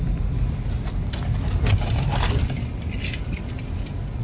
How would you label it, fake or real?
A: real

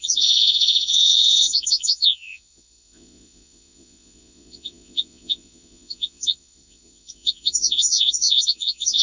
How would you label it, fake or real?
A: fake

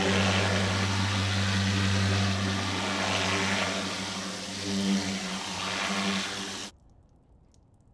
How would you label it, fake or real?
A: real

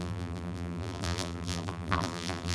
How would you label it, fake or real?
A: fake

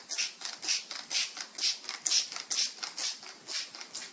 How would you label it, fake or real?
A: real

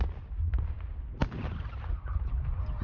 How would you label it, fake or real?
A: real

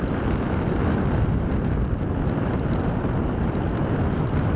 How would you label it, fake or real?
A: fake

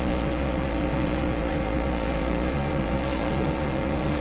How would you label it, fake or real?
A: fake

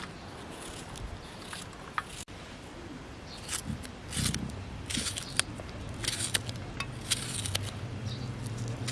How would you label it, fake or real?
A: real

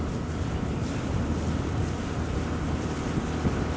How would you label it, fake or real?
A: real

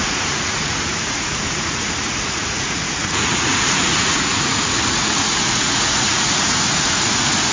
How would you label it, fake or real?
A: fake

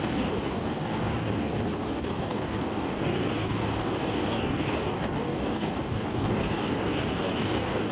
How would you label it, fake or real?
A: fake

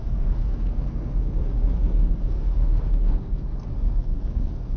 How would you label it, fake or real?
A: fake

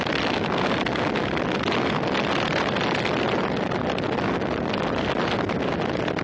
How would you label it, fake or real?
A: real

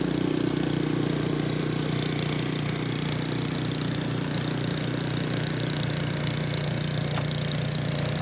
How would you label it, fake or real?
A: real